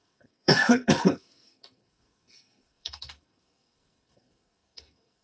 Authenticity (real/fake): fake